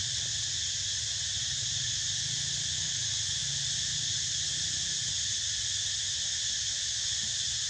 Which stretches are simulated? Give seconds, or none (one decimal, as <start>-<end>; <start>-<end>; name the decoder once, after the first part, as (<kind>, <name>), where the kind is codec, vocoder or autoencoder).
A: none